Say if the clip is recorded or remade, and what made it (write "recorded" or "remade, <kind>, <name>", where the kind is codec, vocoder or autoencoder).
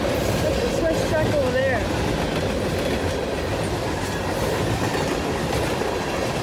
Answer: recorded